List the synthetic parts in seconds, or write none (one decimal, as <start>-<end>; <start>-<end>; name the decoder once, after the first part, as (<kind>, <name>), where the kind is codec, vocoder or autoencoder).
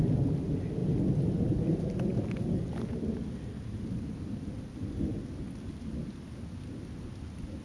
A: none